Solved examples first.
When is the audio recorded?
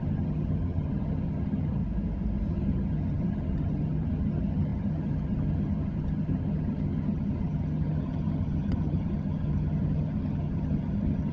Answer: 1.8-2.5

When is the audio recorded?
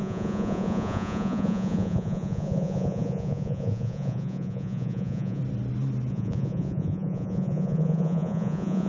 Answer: 5.4-6.1